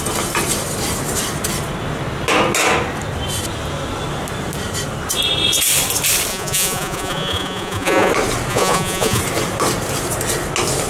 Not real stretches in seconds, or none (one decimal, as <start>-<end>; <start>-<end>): 6.3-8.1; 8.5-9.2